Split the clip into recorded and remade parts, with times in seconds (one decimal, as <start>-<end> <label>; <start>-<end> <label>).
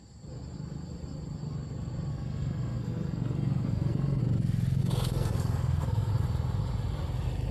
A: 0.0-2.1 recorded; 2.1-4.2 remade; 4.2-4.8 recorded; 4.8-6.1 remade; 6.1-7.5 recorded